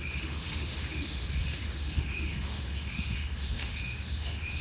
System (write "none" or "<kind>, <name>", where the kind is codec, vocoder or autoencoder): autoencoder, DAC-VAE